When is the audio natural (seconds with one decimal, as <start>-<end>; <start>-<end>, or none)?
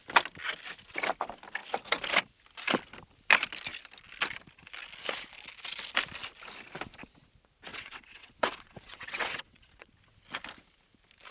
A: 0.0-7.7; 9.9-11.3